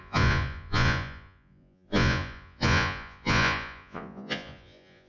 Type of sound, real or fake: fake